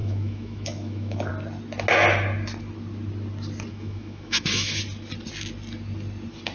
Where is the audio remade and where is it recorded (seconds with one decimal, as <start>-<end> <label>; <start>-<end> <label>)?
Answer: 0.0-1.3 remade; 1.3-3.7 recorded; 3.7-4.8 remade; 4.8-6.5 recorded